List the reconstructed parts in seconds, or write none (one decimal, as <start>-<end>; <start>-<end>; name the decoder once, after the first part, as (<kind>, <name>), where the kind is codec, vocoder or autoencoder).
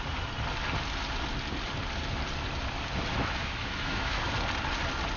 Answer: 3.1-4.3 (autoencoder, DAC-VAE)